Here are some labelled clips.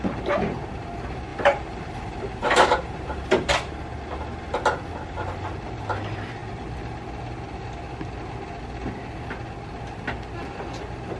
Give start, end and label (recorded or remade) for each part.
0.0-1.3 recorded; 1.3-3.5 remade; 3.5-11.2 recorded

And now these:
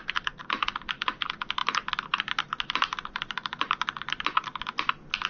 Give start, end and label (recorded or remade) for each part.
0.0-0.4 recorded; 0.4-1.0 remade; 1.0-1.6 recorded; 1.6-4.8 remade; 4.8-5.3 recorded

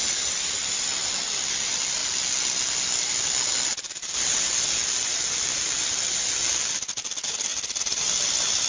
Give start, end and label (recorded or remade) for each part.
0.0-2.0 remade; 2.0-4.2 recorded; 4.2-7.5 remade; 7.5-8.7 recorded

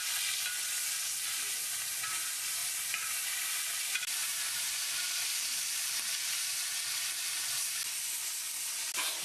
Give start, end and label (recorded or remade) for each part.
0.0-2.6 recorded; 2.6-6.9 remade; 6.9-9.2 recorded

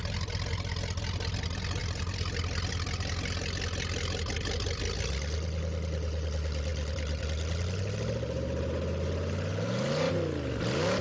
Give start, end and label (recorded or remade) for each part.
0.0-1.8 recorded; 1.8-2.7 remade; 2.7-11.0 recorded

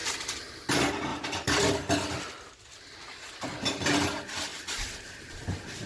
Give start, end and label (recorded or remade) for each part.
0.0-1.1 recorded; 1.1-1.7 remade; 1.7-4.5 recorded; 4.5-5.9 remade